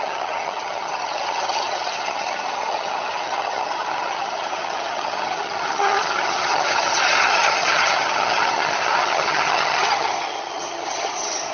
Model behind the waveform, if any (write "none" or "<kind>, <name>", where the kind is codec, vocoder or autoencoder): vocoder, HiFi-GAN